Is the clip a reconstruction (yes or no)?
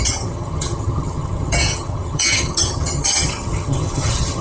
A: yes